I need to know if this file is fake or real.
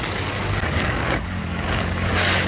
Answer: fake